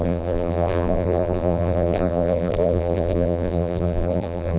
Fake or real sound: fake